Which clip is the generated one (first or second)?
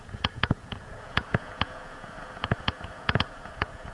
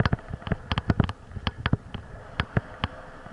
first